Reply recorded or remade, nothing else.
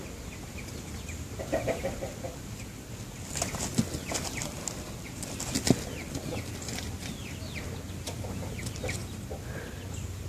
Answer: recorded